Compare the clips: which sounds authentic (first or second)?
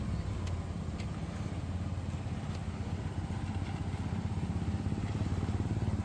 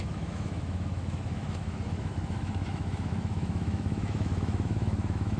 first